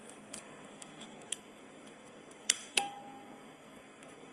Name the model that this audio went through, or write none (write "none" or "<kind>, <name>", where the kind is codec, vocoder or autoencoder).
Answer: codec, SNAC